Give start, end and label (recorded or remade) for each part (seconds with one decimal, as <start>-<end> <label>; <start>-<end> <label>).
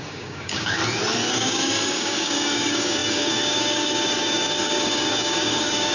0.0-0.8 remade; 0.8-1.3 recorded; 1.3-5.9 remade